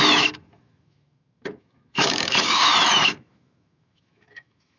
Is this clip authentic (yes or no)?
no